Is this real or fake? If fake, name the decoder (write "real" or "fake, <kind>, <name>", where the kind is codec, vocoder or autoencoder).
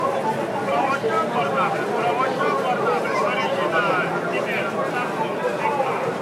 real